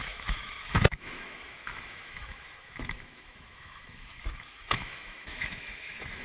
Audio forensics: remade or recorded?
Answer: remade